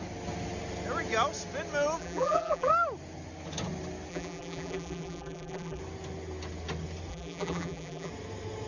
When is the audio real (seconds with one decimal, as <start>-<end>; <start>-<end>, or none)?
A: 0.0-2.0; 2.7-4.1; 5.8-7.1; 8.1-8.7